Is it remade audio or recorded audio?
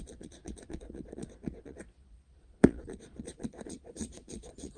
remade